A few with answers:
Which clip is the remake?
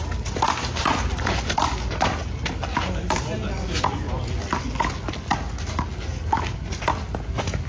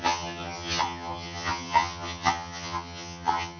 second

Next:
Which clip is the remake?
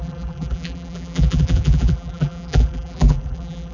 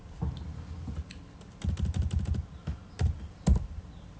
first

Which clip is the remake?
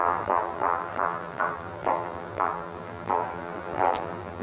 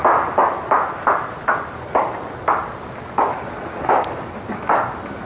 first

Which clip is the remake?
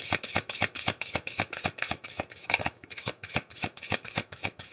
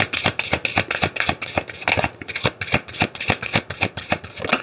first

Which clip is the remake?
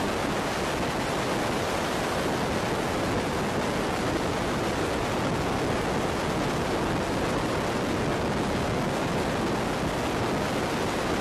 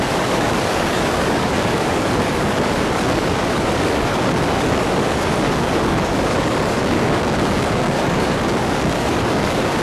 second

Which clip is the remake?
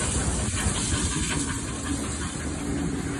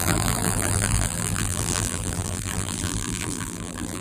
second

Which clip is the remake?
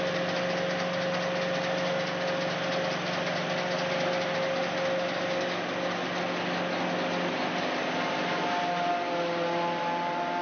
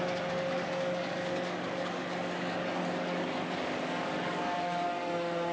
second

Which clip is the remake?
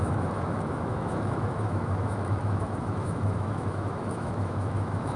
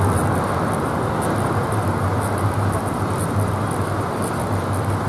first